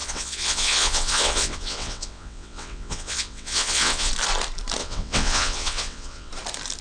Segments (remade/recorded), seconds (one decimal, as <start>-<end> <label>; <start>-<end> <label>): 0.0-4.1 remade; 4.1-4.8 recorded; 4.8-6.3 remade; 6.3-6.8 recorded